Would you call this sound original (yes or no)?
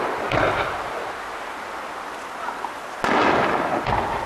yes